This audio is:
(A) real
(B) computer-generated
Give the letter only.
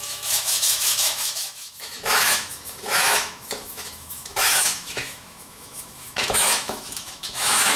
B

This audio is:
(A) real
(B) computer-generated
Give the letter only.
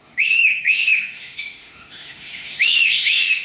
B